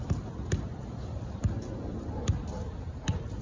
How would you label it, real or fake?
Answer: real